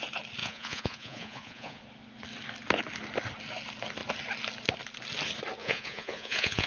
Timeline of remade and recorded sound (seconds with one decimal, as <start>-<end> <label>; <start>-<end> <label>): 0.0-0.4 recorded; 0.4-1.8 remade; 1.8-5.6 recorded; 5.6-6.7 remade